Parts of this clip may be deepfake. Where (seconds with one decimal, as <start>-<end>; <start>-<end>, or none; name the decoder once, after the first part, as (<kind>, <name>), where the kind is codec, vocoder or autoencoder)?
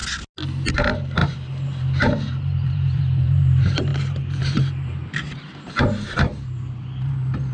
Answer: 0.7-7.5 (vocoder, BigVGAN v2)